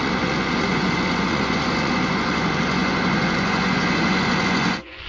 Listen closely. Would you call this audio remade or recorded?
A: remade